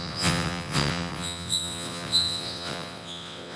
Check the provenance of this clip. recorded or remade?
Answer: remade